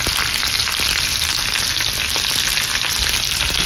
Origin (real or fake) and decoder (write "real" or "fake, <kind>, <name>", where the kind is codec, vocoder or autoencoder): real